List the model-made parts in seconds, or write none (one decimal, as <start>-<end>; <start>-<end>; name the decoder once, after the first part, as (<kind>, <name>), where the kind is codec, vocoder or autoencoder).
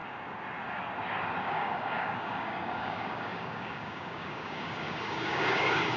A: 1.4-6.0 (codec, DAC)